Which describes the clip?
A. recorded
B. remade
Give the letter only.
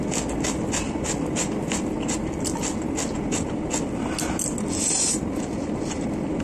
A